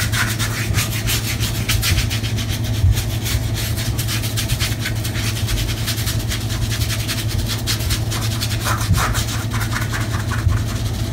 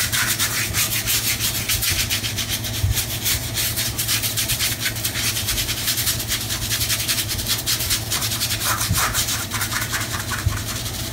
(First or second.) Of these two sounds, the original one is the first